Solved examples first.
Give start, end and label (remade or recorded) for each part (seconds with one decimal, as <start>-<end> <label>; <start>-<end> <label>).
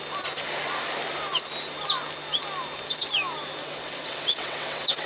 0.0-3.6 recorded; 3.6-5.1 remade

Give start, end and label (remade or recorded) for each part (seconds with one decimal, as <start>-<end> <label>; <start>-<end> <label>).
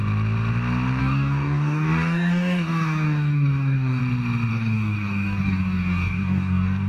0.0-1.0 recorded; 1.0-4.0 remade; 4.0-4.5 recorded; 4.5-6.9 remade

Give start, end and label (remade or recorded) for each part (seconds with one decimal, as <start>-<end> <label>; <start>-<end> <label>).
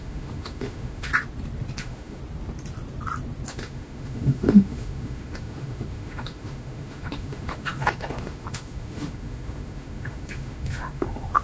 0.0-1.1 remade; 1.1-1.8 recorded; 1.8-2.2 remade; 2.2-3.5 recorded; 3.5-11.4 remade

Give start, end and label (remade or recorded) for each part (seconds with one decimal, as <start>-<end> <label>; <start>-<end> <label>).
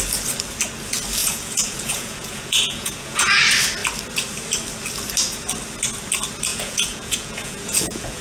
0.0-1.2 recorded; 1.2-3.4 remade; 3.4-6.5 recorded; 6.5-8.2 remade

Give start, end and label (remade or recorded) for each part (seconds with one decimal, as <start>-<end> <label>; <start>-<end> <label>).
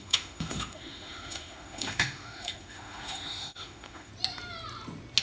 0.0-4.1 remade; 4.1-5.2 recorded